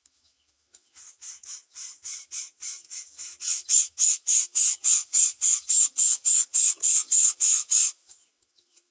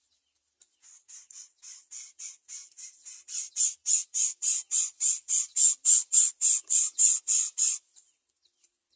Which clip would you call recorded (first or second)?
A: second